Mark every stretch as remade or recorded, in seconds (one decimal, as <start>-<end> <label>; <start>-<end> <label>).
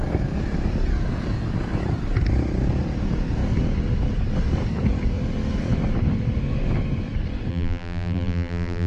0.0-7.5 recorded; 7.5-8.9 remade